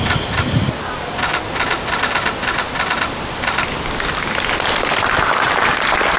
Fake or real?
real